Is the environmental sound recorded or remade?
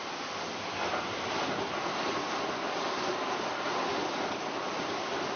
recorded